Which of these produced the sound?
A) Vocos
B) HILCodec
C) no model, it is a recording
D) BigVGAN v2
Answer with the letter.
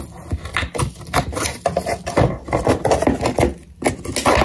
C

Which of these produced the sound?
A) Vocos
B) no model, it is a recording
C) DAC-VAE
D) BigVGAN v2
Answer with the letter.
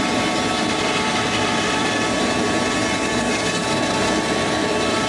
D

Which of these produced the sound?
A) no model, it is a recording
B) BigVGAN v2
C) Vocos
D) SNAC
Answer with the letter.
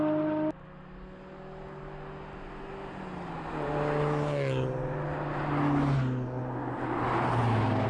A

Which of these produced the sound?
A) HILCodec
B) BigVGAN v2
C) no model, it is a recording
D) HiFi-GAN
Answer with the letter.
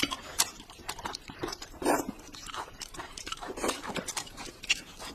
B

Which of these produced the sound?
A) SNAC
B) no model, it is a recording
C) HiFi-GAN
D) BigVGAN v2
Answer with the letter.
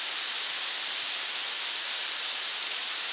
B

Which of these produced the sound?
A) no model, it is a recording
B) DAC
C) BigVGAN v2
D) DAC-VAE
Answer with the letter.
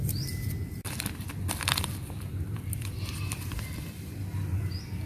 C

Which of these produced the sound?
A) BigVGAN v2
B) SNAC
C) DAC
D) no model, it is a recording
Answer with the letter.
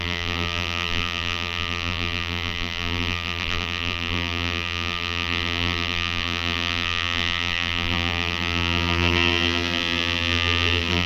A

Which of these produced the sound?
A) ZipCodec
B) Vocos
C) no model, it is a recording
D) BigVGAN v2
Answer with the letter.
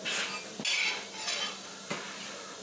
C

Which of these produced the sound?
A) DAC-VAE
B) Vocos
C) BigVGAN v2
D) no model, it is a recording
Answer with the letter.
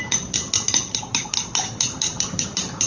C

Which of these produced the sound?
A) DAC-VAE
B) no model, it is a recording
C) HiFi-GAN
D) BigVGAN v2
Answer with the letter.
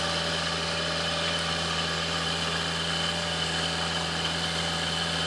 D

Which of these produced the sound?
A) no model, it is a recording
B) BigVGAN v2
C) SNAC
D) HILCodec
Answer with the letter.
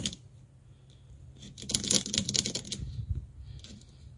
A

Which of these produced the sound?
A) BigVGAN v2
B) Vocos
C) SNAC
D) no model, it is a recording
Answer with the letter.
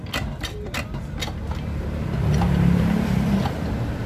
D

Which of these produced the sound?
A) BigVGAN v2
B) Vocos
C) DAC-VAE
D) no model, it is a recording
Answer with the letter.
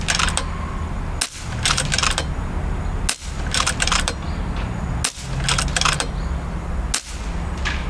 D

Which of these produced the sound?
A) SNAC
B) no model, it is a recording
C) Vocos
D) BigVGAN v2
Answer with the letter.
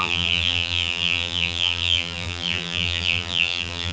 D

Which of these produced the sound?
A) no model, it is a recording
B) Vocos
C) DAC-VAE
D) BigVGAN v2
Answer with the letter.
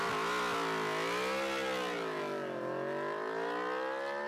A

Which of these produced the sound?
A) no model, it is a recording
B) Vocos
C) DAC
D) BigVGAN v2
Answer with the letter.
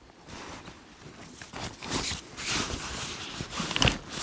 A